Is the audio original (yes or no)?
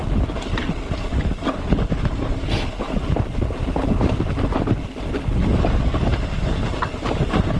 yes